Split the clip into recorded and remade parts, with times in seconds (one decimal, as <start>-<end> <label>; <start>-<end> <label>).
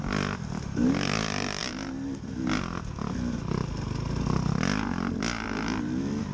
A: 0.0-6.3 recorded